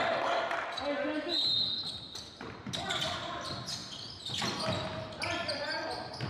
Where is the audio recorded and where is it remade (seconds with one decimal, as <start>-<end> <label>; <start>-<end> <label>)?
0.0-6.3 recorded